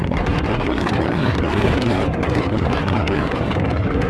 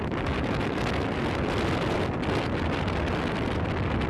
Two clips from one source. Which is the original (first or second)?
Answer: second